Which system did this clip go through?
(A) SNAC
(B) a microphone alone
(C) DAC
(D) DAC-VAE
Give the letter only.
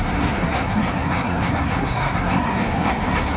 A